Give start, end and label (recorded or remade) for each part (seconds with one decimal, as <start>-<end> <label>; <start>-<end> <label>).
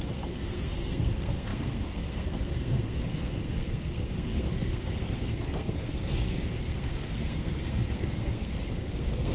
0.0-9.3 remade